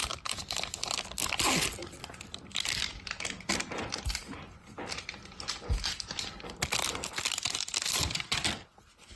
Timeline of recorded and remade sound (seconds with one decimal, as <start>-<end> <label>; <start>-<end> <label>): 0.0-9.2 recorded